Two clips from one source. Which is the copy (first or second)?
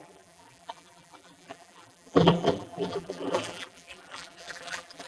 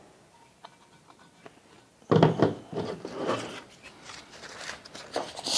first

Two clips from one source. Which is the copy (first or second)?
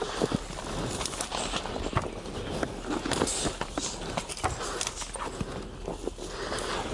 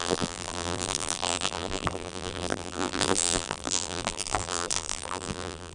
second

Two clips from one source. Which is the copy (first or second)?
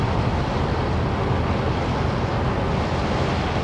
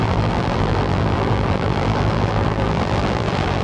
second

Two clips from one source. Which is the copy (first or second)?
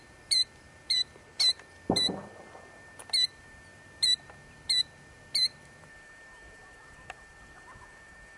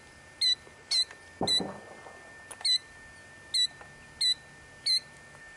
first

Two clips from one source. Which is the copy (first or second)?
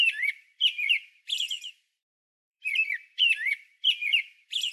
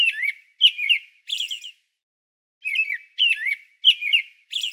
first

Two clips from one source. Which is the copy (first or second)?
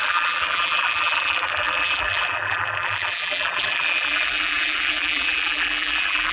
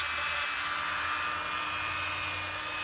first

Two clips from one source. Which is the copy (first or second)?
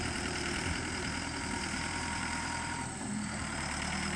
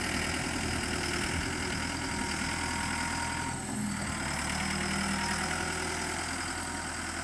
first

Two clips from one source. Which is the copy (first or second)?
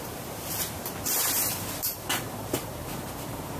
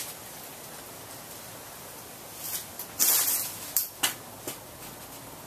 first